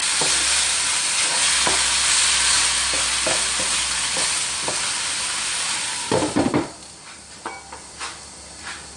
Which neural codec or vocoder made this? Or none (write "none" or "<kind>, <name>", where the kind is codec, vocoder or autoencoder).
none